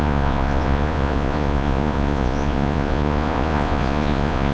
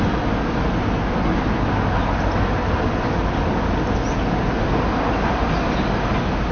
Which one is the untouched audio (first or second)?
second